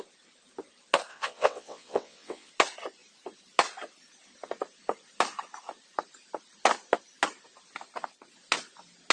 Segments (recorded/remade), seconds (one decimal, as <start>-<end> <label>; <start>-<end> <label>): 0.0-1.1 recorded; 1.1-2.5 remade; 2.5-9.1 recorded